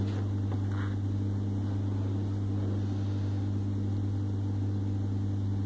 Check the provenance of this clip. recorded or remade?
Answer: recorded